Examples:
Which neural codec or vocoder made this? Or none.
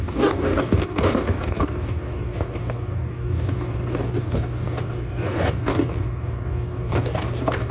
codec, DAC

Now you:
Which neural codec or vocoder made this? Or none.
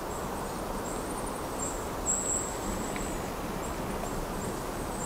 none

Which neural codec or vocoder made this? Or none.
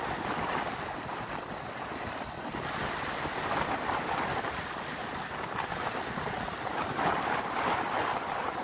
none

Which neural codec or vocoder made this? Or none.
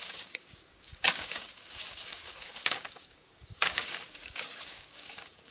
codec, DAC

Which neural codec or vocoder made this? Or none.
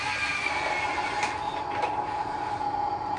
none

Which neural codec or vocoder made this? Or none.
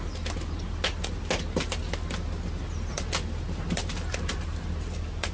none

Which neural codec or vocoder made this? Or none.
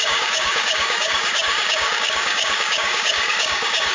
codec, DAC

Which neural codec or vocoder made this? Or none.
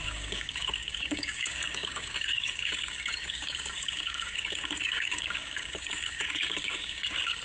codec, DAC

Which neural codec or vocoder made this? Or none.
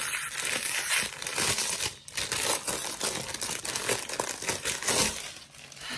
none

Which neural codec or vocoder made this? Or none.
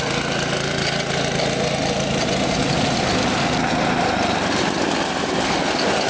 none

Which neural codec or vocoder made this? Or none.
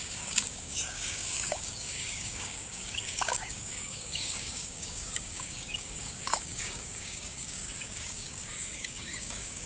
codec, DAC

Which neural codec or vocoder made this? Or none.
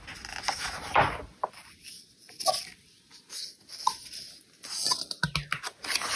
none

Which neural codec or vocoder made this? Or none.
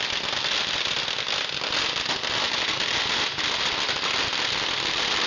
none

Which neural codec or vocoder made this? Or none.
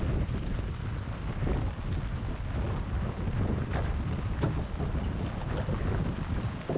none